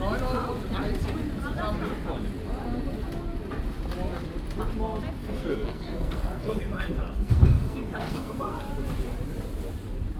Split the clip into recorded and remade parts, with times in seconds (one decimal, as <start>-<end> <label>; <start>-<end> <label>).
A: 0.0-5.2 recorded; 5.2-8.7 remade; 8.7-10.2 recorded